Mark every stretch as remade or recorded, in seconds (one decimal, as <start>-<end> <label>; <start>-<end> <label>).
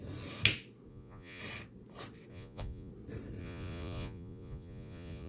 0.0-0.9 recorded; 0.9-1.4 remade; 1.4-2.3 recorded; 2.3-2.9 remade; 2.9-3.4 recorded; 3.4-5.3 remade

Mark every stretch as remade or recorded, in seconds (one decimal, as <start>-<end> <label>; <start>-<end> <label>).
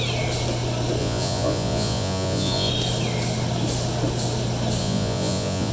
0.0-1.0 recorded; 1.0-2.7 remade; 2.7-4.8 recorded; 4.8-5.7 remade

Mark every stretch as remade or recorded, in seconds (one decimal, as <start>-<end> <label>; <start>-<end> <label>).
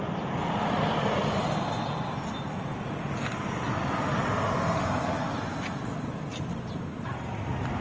0.0-7.8 recorded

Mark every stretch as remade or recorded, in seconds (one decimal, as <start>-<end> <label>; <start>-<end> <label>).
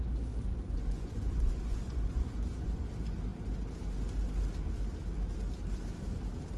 0.0-0.5 recorded; 0.5-2.8 remade; 2.8-6.6 recorded